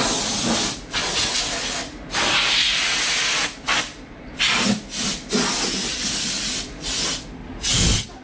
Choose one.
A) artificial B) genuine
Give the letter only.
B